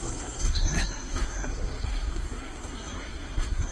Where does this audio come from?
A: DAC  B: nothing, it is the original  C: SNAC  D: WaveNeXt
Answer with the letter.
C